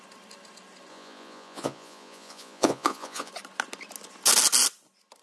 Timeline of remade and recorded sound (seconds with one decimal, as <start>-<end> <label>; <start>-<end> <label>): 0.0-0.9 recorded; 0.9-3.3 remade; 3.3-5.2 recorded